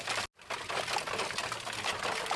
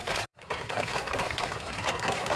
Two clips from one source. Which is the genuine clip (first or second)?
first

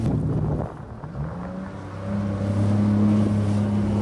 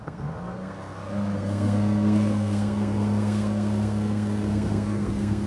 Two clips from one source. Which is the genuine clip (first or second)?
first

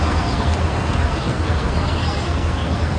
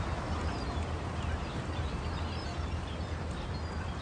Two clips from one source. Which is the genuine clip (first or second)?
second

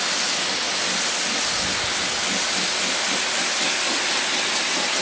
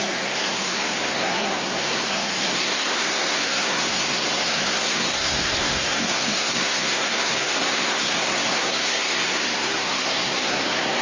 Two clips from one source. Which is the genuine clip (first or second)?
first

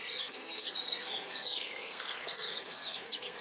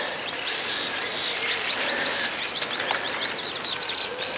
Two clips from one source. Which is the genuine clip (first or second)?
second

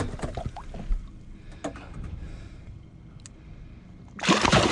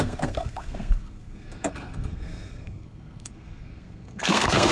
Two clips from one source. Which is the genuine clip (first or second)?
first